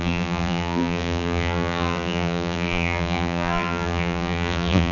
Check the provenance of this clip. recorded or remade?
remade